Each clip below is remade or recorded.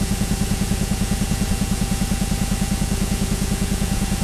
remade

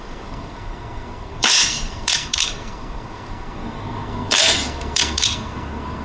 remade